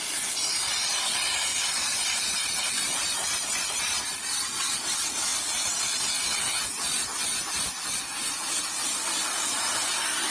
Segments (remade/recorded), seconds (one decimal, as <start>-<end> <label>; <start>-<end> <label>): 0.0-1.5 recorded; 1.5-2.5 remade; 2.5-10.3 recorded